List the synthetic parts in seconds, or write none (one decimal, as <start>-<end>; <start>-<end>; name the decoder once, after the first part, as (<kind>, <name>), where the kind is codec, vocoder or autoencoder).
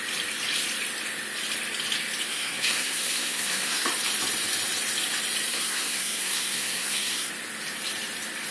2.3-3.9 (codec, SNAC); 5.5-7.3